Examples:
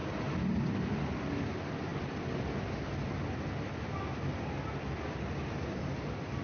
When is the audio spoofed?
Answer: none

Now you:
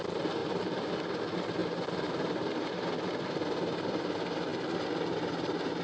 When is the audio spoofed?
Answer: 0.4-1.2 (vocoder, BigVGAN v2); 1.6-2.5

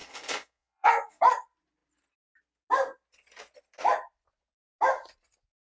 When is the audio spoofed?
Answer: 0.0-1.2 (codec, SNAC)

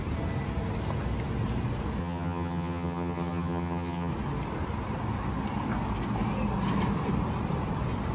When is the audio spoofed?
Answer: 2.0-4.1 (vocoder, HiFi-GAN)

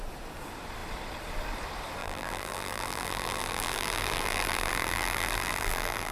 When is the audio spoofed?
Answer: 2.0-6.1 (vocoder, BigVGAN v2)

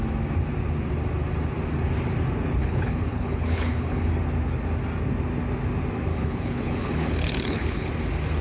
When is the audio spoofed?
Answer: 2.6-4.1 (codec, HILCodec); 6.1-7.9

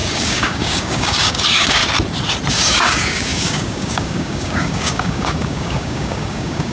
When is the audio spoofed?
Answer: 0.0-1.8 (codec, DAC); 2.5-6.7